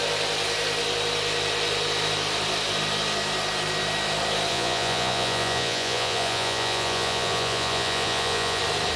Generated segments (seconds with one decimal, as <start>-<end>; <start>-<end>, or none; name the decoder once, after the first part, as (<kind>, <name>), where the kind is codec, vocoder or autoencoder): 4.5-8.6 (vocoder, Vocos)